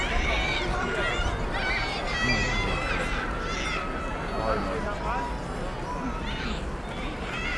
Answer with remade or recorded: recorded